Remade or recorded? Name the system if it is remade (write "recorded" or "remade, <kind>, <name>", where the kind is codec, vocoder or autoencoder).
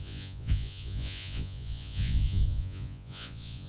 remade, vocoder, Vocos